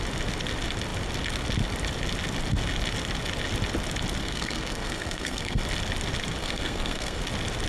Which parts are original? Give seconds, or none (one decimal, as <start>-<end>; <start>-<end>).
0.0-4.2; 5.6-6.4; 7.2-7.7